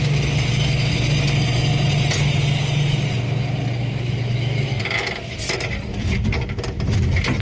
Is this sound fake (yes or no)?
no